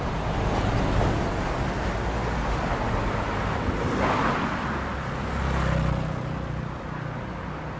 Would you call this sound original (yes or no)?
yes